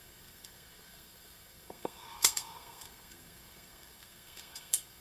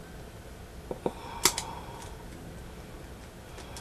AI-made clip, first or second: first